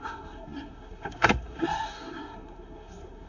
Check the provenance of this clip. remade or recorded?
remade